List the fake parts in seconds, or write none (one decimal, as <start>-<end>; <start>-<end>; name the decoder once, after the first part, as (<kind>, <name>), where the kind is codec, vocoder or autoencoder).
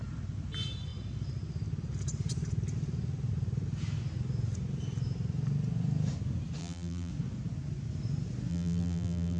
6.6-7.1 (vocoder, BigVGAN v2); 8.5-9.4